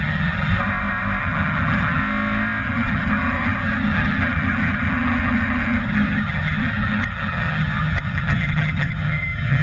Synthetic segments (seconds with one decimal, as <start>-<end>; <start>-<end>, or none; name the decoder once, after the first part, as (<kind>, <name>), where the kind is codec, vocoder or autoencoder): 0.0-0.5 (vocoder, HiFi-GAN); 1.2-2.0; 2.6-9.6